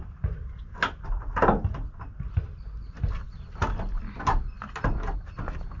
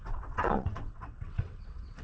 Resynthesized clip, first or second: second